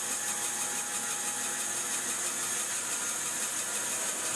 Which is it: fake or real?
real